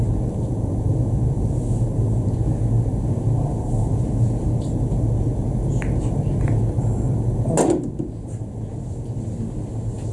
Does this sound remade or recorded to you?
recorded